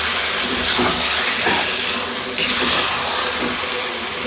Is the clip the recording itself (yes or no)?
yes